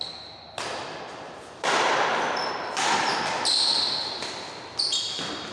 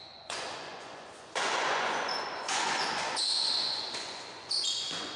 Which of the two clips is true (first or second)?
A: first